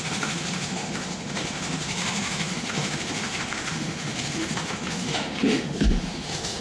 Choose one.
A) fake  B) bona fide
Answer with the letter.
A